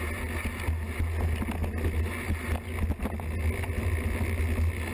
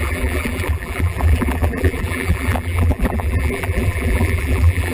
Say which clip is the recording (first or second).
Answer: first